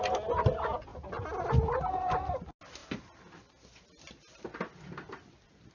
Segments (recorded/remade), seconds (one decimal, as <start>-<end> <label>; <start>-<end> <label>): 0.0-5.7 recorded